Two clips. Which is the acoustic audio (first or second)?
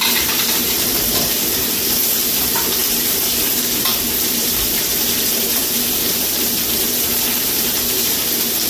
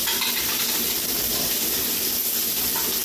second